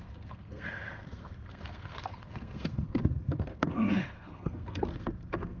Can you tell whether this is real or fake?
fake